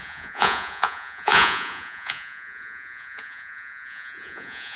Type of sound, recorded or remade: remade